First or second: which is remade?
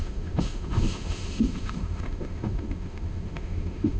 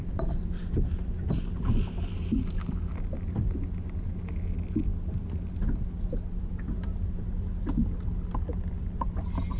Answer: first